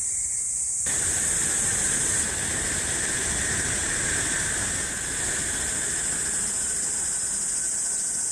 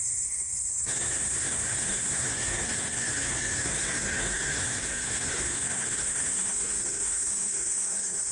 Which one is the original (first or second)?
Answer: first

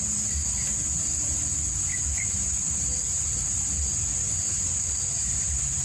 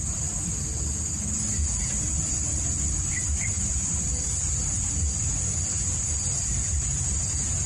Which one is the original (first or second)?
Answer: first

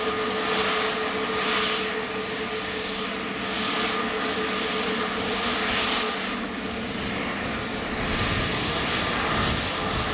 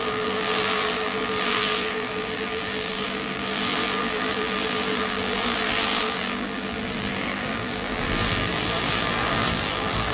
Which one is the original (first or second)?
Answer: first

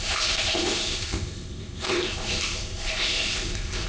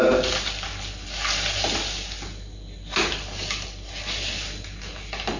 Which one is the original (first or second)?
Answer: second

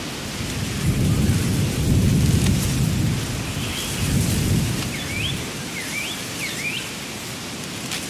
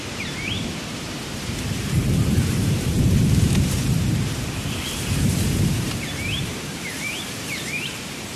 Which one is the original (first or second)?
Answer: first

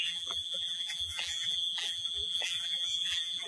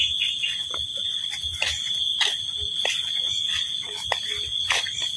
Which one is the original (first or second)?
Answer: second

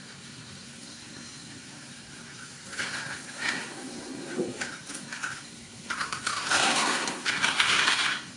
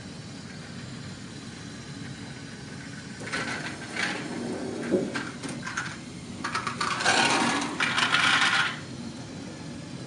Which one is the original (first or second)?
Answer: second